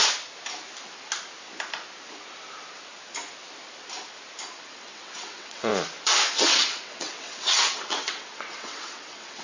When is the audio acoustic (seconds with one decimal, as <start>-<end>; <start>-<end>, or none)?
0.0-4.6; 5.7-6.3